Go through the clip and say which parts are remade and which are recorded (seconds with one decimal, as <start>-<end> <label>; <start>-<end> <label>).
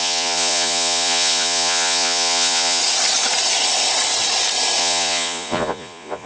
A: 0.0-2.8 remade; 2.8-4.8 recorded; 4.8-6.3 remade